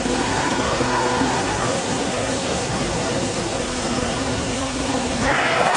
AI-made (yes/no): yes